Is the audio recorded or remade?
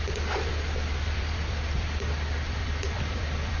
remade